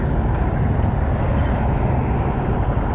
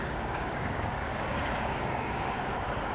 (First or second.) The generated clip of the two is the second